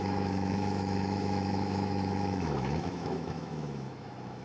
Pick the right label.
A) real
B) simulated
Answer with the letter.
B